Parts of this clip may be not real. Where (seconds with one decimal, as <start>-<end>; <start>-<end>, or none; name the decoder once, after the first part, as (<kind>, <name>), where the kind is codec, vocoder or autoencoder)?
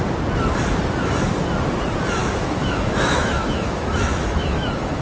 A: 2.2-5.0 (autoencoder, DAC-VAE)